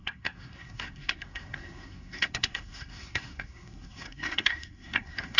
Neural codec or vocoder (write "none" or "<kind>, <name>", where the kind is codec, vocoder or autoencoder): codec, SNAC